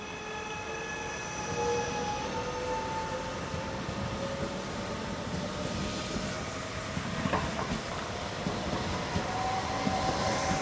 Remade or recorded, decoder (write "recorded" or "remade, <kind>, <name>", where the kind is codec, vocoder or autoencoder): recorded